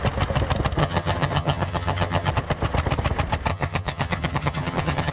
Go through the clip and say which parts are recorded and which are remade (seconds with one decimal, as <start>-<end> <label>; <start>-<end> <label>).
0.0-0.8 recorded; 0.8-2.3 remade; 2.3-3.5 recorded; 3.5-5.1 remade